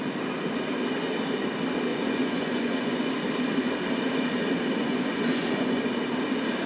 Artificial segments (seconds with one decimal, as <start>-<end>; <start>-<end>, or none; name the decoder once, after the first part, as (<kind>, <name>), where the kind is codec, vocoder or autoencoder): 1.9-3.1 (vocoder, Vocos); 4.8-5.8